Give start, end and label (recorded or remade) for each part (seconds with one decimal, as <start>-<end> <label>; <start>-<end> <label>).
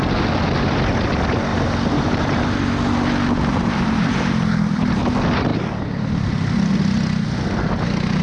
0.0-1.5 recorded; 1.5-2.7 remade; 2.7-3.5 recorded; 3.5-4.3 remade; 4.3-8.2 recorded